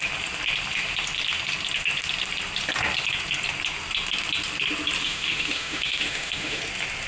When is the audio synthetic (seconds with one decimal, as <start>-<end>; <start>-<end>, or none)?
5.0-6.6